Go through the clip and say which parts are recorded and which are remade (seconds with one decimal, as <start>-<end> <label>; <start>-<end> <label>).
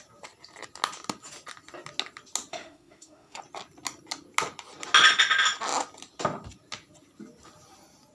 0.0-2.5 recorded; 2.5-3.4 remade; 3.4-8.1 recorded